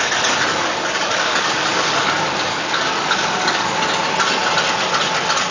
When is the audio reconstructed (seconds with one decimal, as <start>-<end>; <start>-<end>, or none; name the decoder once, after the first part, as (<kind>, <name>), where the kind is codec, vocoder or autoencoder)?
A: 0.5-3.8 (codec, DAC)